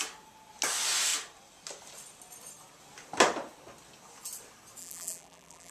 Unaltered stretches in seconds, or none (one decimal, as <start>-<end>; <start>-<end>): 0.0-4.8